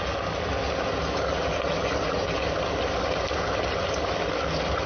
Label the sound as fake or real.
real